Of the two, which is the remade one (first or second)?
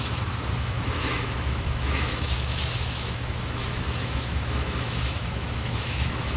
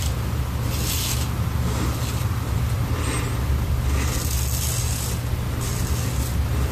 first